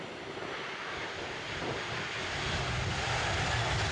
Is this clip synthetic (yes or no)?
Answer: no